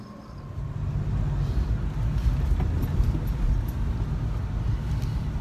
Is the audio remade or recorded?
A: recorded